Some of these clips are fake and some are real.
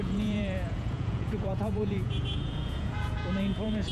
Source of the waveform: fake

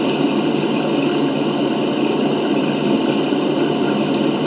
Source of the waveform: real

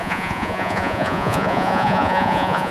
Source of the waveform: fake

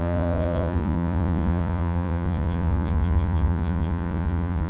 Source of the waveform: fake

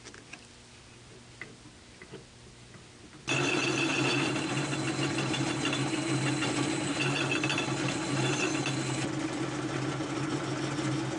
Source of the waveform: real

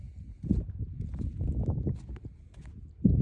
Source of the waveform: real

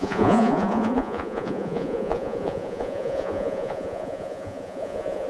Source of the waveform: fake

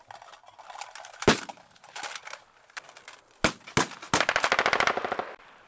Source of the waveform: real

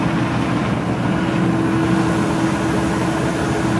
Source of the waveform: real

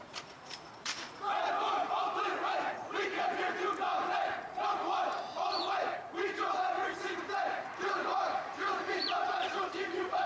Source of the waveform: fake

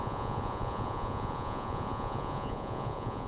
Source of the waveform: fake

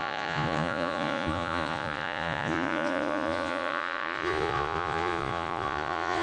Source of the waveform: fake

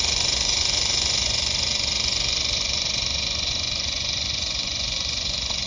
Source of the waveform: fake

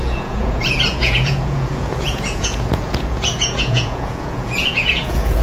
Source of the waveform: fake